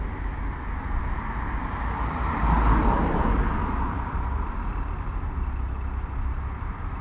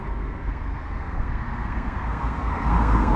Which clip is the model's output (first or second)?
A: second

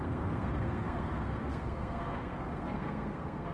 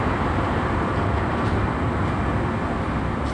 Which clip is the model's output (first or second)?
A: first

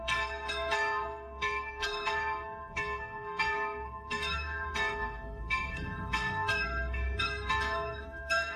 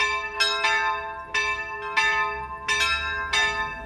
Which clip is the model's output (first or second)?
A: first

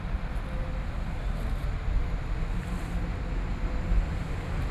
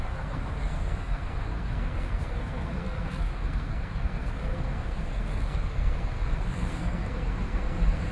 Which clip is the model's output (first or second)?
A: second